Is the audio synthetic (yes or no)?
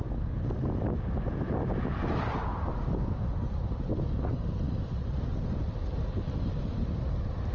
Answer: no